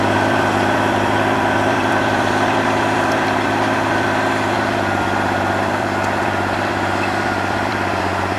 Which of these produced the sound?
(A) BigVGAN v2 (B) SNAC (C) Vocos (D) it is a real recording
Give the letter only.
A